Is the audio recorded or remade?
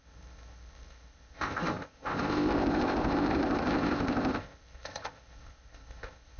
remade